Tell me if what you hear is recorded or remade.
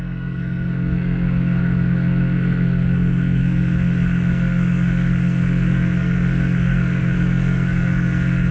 remade